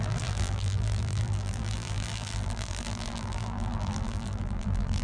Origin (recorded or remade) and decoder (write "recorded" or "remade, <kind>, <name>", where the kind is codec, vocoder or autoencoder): remade, vocoder, BigVGAN v2